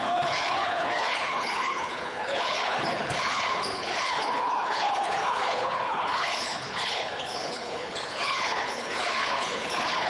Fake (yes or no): yes